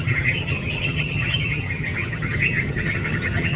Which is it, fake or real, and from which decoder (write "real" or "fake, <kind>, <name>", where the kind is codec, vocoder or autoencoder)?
fake, vocoder, HiFi-GAN